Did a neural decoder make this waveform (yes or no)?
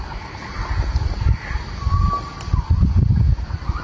no